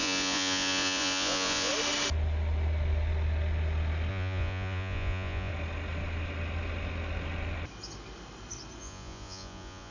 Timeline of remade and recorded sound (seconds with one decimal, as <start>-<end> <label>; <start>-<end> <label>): 0.0-1.7 remade; 1.7-4.1 recorded; 4.1-5.5 remade; 5.5-8.8 recorded; 8.8-9.9 remade